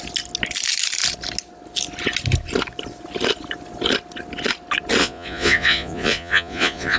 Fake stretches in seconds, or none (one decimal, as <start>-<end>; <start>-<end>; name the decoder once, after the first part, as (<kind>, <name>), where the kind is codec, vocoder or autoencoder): 5.0-7.0 (vocoder, Vocos)